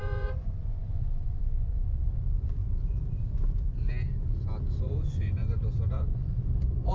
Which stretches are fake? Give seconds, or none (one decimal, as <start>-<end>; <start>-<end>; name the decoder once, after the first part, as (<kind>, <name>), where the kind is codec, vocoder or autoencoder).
0.0-2.6 (vocoder, Vocos); 4.8-5.4; 5.9-6.9